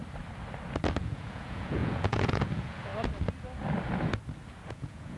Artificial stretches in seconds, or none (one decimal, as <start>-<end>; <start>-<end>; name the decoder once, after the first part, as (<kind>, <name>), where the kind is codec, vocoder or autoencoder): 1.0-2.9 (vocoder, Vocos); 4.7-5.2